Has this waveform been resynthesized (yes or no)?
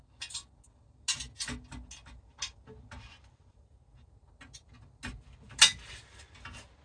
no